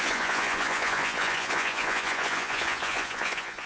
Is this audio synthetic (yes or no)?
yes